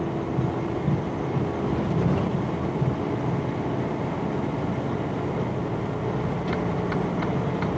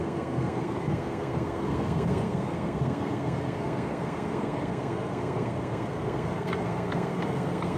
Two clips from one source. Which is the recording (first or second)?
first